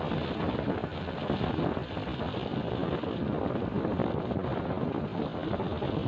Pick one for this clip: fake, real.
real